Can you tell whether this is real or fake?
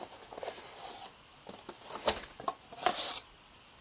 real